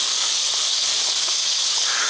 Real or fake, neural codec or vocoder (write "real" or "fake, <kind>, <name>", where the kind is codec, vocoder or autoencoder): fake, codec, DAC